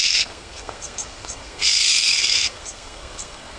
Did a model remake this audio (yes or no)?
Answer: yes